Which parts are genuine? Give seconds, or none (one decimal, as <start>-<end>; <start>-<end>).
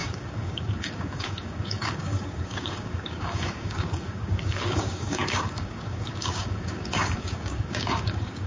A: none